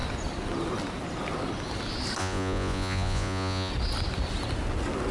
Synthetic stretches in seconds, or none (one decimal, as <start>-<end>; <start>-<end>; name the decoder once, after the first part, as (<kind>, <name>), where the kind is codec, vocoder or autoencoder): 2.2-3.7 (vocoder, Vocos)